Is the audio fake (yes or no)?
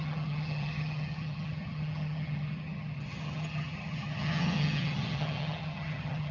yes